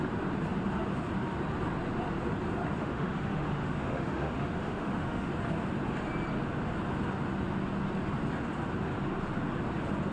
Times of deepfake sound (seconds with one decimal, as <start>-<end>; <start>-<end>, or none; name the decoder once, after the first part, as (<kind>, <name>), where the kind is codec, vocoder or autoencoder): 2.8-5.3 (autoencoder, DAC-VAE)